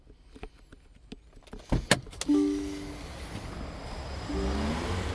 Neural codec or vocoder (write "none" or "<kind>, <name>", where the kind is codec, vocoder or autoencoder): none